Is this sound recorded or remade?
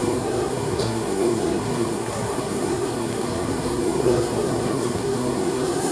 remade